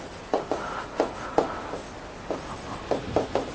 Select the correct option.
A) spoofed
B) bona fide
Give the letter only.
B